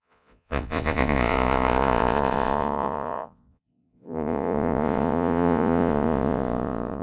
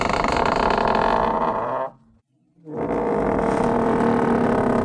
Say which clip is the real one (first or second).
second